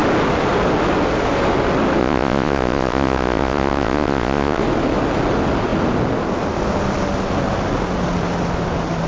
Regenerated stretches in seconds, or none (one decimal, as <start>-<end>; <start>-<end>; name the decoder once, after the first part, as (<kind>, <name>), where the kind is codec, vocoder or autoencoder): 2.0-4.6 (vocoder, Vocos)

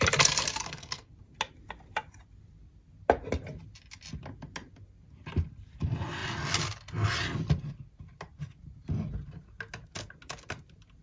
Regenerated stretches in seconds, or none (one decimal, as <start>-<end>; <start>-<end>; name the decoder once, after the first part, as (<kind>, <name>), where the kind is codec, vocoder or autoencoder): 0.6-1.1 (codec, SNAC)

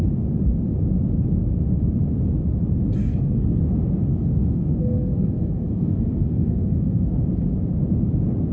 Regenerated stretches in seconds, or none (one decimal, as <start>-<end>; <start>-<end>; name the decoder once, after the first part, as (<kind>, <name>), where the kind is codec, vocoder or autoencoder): 3.0-3.6 (codec, SNAC); 4.1-7.2

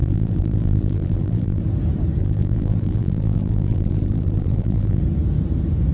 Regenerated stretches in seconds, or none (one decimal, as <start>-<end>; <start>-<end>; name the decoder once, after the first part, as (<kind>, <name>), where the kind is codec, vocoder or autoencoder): 0.0-1.6 (vocoder, BigVGAN v2); 2.2-5.0

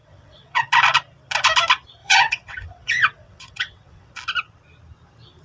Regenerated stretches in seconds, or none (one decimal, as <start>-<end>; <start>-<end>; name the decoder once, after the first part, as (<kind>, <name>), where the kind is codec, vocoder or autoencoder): 0.0-0.7 (vocoder, WaveNeXt); 2.0-4.1

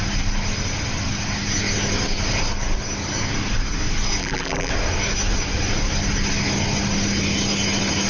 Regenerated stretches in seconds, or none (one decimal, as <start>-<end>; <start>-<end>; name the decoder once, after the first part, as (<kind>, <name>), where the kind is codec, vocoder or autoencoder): 4.2-4.7 (vocoder, BigVGAN v2)

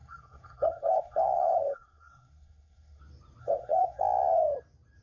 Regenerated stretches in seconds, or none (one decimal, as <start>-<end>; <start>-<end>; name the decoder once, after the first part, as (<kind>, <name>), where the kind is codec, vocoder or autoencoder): 0.0-3.0 (codec, SNAC); 3.4-4.0

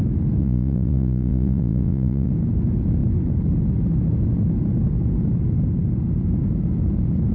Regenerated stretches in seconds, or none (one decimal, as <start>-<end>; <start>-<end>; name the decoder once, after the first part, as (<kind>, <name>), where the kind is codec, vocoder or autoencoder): 0.4-2.3 (vocoder, Vocos)